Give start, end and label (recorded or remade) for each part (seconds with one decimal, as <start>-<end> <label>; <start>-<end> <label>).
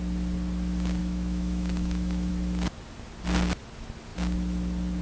0.0-1.0 recorded; 1.0-2.3 remade; 2.3-5.0 recorded